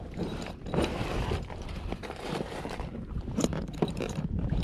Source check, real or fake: fake